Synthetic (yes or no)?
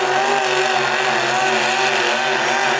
no